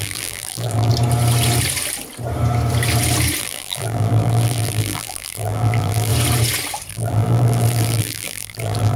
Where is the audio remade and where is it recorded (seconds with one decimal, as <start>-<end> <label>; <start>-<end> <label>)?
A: 0.0-0.9 remade; 0.9-3.4 recorded; 3.4-6.1 remade; 6.1-6.9 recorded; 6.9-9.0 remade